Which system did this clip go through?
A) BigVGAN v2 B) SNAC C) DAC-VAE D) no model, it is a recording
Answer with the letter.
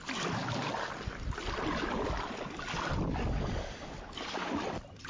D